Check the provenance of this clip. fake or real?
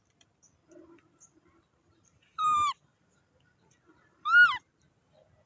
real